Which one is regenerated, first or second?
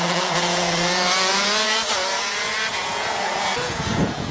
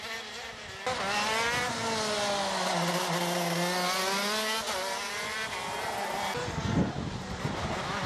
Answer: first